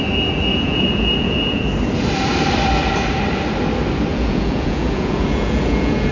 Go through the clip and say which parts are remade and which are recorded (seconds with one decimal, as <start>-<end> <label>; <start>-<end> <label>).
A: 0.0-0.5 recorded; 0.5-1.6 remade; 1.6-4.1 recorded; 4.1-6.1 remade